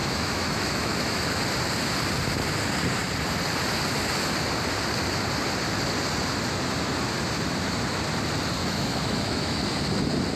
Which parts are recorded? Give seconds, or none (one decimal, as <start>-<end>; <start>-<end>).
1.2-8.6; 9.6-10.4